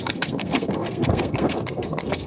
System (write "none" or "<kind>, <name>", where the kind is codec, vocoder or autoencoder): codec, SNAC